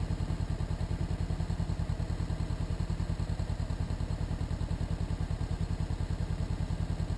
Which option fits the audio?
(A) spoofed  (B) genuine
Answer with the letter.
B